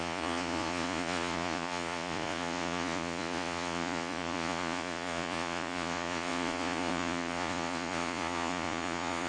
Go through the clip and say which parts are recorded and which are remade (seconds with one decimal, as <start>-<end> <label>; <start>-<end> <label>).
0.0-9.3 remade